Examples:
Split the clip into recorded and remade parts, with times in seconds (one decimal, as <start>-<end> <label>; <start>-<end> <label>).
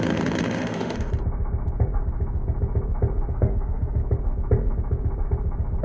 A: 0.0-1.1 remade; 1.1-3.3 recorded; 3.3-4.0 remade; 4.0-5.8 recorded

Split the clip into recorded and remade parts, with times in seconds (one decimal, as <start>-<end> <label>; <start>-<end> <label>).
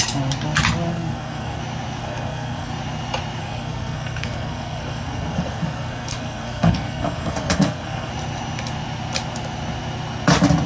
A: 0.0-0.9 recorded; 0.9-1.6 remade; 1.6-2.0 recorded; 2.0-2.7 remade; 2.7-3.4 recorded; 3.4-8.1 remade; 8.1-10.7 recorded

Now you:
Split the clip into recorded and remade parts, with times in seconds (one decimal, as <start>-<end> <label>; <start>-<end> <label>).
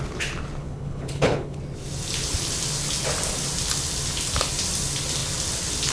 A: 0.0-0.6 recorded; 0.6-1.6 remade; 1.6-5.9 recorded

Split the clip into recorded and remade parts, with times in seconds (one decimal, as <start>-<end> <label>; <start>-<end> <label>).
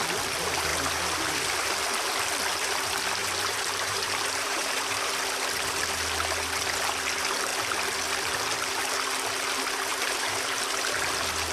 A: 0.0-3.2 recorded; 3.2-5.1 remade; 5.1-9.9 recorded; 9.9-10.6 remade; 10.6-11.5 recorded